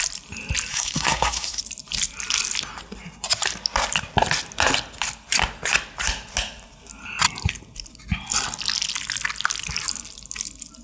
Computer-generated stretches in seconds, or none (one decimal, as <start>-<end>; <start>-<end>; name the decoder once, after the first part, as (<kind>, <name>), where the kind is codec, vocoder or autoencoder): 0.7-1.6 (codec, SNAC)